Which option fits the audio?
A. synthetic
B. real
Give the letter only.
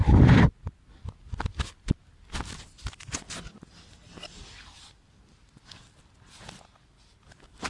B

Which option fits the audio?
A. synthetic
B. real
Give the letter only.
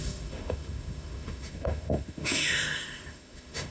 A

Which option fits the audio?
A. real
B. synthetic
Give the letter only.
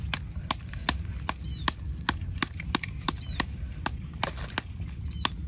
A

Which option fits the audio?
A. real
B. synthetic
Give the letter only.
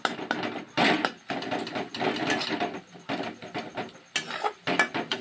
A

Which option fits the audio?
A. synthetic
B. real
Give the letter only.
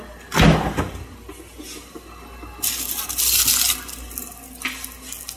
B